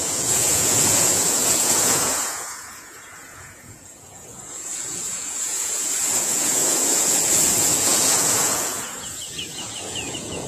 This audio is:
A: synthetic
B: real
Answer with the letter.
A